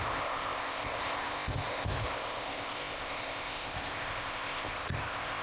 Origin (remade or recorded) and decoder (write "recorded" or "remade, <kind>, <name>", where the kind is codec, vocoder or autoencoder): remade, codec, ZipCodec